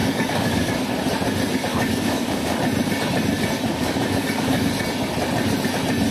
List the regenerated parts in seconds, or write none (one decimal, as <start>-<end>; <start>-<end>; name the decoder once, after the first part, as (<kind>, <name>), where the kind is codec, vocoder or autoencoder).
0.0-0.7 (codec, DAC); 1.7-2.6; 3.7-4.7